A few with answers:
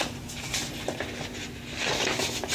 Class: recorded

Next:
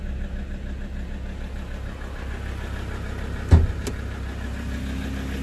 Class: recorded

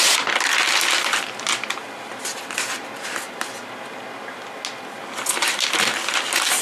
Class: recorded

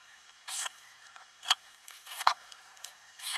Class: remade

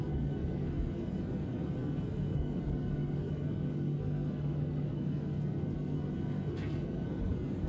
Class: remade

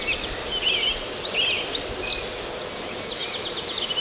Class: recorded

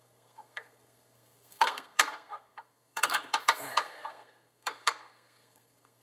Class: remade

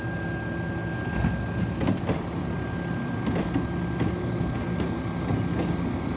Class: recorded